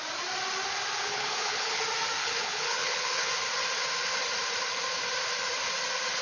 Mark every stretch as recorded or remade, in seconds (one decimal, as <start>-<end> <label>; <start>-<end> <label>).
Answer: 0.0-1.0 recorded; 1.0-1.8 remade; 1.8-2.2 recorded; 2.2-3.3 remade; 3.3-6.2 recorded

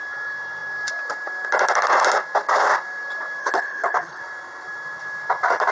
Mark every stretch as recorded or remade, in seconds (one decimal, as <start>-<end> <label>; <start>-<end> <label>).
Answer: 0.0-3.4 recorded; 3.4-4.2 remade; 4.2-5.7 recorded